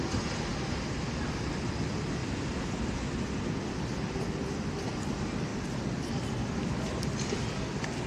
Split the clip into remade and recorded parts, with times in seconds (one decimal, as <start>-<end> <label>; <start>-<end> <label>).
0.0-8.1 recorded